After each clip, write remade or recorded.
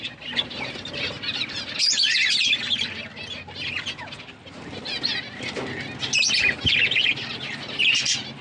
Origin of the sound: recorded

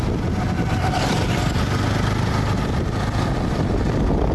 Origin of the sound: recorded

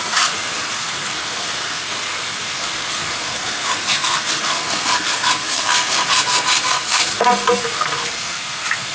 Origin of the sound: remade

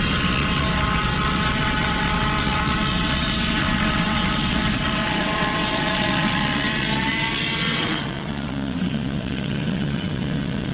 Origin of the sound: remade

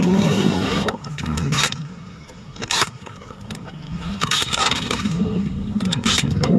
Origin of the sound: remade